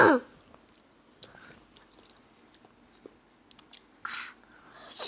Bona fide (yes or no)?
yes